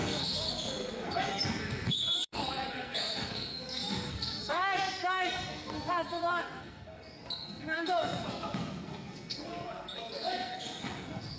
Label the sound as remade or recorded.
remade